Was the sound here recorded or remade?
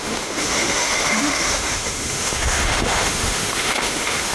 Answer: remade